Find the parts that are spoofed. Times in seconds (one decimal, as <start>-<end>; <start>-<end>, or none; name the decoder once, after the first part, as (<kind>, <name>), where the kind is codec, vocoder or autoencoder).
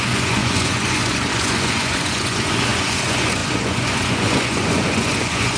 0.0-5.6 (vocoder, Vocos)